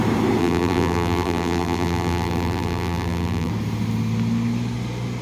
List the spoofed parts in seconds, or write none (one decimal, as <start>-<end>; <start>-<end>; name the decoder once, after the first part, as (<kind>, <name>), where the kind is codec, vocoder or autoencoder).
0.4-3.5 (vocoder, BigVGAN v2)